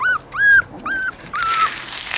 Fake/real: real